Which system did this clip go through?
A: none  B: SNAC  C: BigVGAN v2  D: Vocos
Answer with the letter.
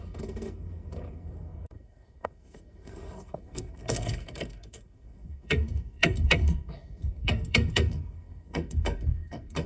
B